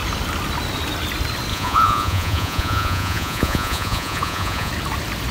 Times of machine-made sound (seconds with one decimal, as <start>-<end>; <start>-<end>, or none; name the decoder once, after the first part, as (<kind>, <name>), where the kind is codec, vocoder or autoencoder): 1.5-4.7 (vocoder, Vocos)